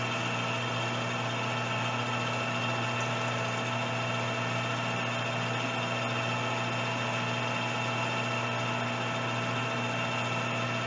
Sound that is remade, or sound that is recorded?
recorded